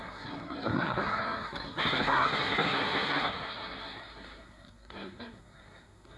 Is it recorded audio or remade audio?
remade